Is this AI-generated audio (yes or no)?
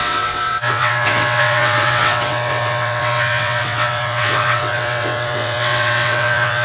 yes